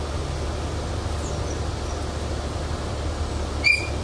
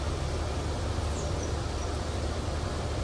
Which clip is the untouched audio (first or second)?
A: first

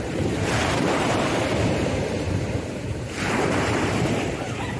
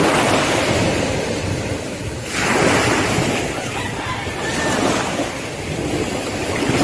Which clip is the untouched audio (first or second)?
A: second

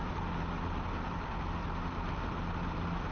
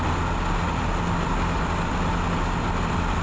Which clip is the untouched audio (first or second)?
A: second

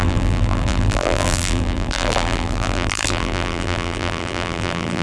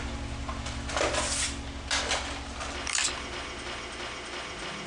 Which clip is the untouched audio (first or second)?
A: second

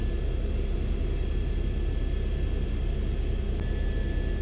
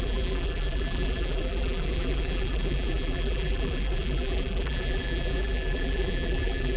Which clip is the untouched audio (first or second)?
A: first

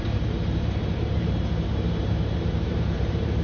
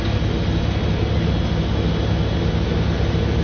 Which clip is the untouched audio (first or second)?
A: second